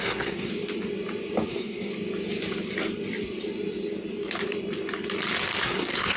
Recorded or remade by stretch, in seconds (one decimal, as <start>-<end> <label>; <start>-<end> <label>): 0.0-0.5 remade; 0.5-1.5 recorded; 1.5-1.9 remade; 1.9-5.6 recorded; 5.6-6.2 remade